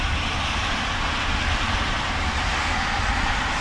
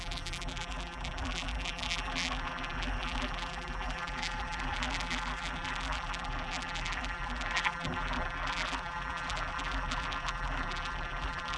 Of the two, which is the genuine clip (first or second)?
first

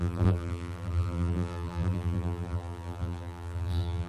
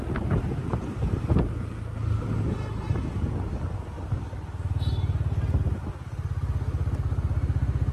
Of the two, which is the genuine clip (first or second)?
second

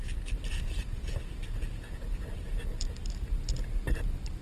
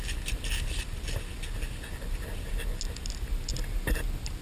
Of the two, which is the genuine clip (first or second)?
second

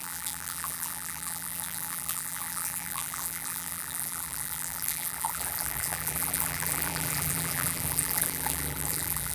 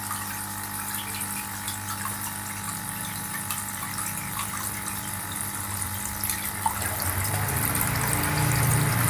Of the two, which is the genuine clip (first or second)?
second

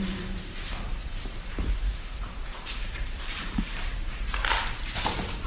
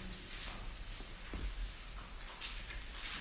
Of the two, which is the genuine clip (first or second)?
second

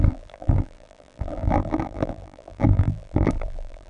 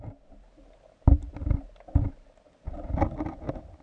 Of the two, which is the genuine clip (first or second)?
second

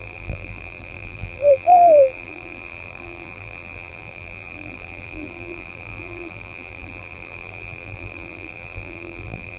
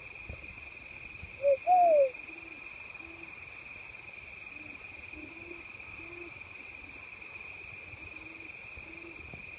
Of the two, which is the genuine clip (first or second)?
second